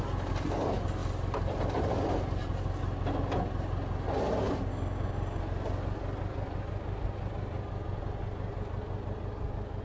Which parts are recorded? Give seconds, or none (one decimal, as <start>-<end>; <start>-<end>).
0.0-4.7; 5.4-9.8